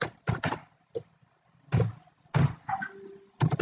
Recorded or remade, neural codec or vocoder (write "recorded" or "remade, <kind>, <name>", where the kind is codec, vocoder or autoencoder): recorded